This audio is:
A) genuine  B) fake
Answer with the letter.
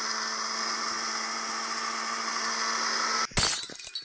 A